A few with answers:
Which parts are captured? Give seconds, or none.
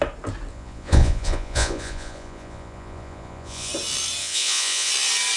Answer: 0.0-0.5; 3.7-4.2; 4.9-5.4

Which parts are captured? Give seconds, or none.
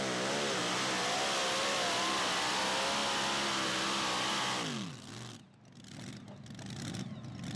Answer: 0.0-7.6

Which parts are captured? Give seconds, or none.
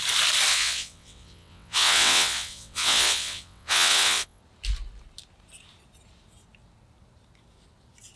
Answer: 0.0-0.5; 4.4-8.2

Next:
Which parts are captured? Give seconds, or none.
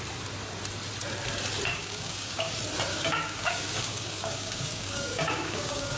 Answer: 0.0-1.7; 2.5-2.9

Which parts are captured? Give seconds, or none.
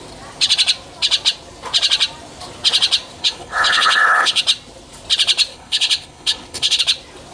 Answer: 0.0-3.2; 4.4-5.5; 6.8-7.3